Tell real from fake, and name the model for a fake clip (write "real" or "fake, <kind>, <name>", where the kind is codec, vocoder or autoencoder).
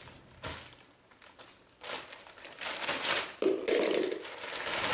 real